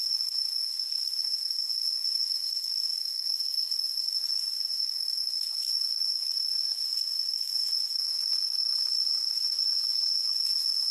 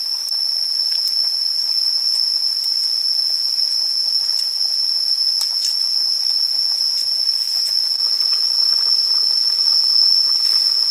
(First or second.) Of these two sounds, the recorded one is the second